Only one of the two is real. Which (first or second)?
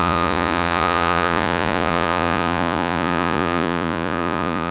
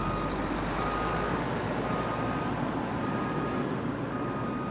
second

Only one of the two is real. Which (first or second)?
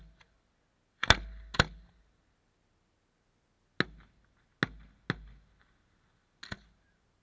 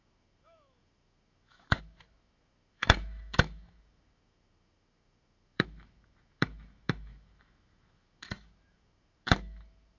first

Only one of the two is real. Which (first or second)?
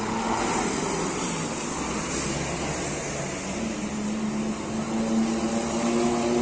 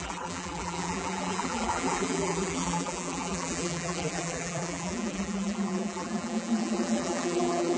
first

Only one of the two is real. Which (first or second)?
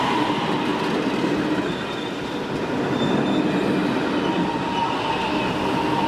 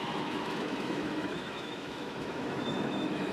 first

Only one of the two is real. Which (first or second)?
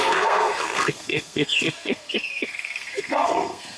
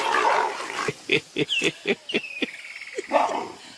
second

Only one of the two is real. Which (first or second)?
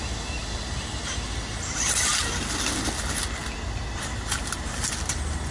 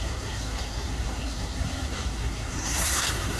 first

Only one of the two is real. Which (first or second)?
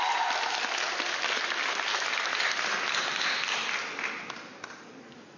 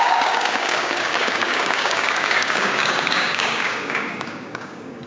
first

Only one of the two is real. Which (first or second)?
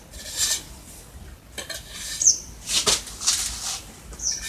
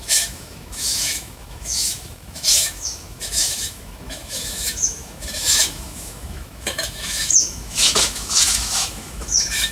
first